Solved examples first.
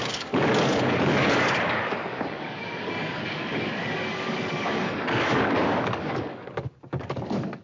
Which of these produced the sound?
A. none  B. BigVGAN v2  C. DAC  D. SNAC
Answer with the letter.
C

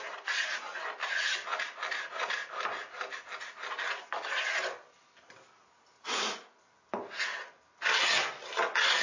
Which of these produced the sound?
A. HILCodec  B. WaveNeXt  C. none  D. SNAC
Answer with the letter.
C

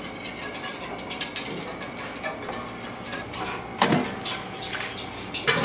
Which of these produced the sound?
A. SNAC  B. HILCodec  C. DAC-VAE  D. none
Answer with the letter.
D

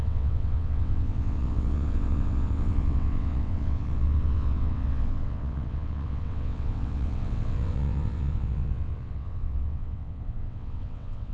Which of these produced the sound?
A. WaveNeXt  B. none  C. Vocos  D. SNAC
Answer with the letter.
A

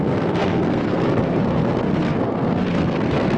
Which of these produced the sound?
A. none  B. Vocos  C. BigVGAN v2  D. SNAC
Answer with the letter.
D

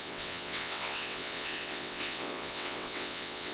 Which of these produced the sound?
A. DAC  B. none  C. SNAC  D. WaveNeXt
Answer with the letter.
D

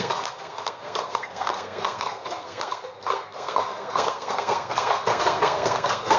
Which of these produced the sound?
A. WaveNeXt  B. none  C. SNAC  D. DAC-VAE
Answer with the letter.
C